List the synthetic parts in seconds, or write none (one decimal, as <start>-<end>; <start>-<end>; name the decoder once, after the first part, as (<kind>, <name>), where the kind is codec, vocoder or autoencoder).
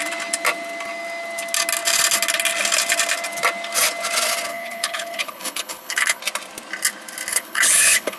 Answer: 4.5-6.2 (codec, HILCodec); 7.3-8.2